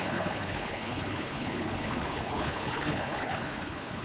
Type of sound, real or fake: fake